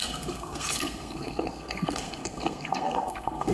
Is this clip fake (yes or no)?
yes